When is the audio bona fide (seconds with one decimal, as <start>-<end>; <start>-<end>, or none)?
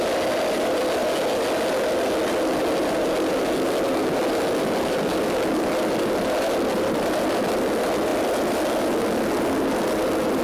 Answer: 0.0-10.4